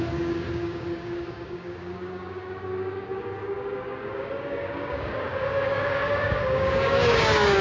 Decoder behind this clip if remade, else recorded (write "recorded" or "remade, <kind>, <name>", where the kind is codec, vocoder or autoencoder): remade, codec, DAC